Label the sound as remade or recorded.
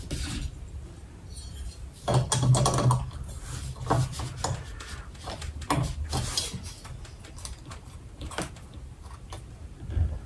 recorded